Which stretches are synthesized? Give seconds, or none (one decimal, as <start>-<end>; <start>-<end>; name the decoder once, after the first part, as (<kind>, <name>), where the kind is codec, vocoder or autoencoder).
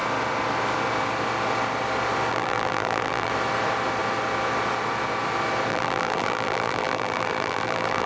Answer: 2.3-3.3 (vocoder, BigVGAN v2); 5.7-8.1